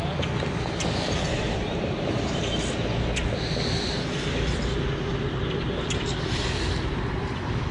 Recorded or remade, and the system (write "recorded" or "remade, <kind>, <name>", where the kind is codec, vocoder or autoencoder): recorded